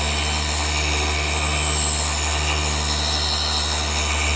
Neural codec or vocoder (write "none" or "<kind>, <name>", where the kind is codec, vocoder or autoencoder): none